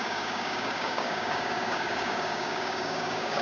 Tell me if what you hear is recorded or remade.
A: remade